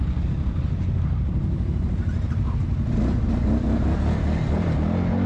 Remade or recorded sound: recorded